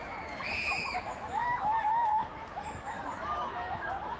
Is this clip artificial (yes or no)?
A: yes